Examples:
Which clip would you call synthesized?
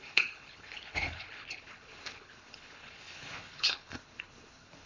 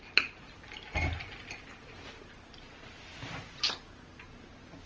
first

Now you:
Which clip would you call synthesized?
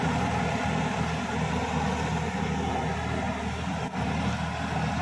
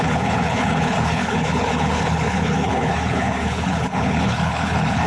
second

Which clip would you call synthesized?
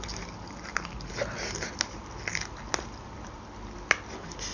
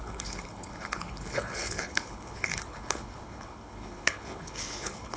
second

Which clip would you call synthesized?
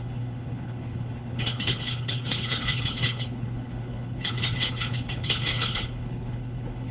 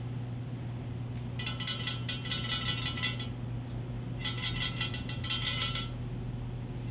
first